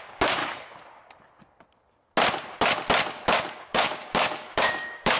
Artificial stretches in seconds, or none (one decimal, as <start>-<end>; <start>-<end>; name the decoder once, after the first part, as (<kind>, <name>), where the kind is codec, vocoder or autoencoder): 0.0-0.4 (codec, DAC); 3.5-5.2